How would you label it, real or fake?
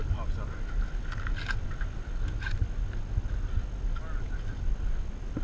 real